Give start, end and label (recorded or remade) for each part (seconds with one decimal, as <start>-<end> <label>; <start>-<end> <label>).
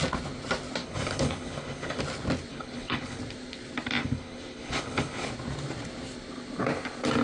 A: 0.0-0.8 recorded; 0.8-2.0 remade; 2.0-2.5 recorded; 2.5-3.2 remade; 3.2-4.0 recorded; 4.0-5.3 remade; 5.3-7.2 recorded